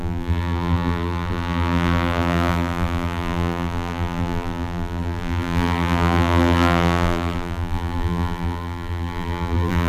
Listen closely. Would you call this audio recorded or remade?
remade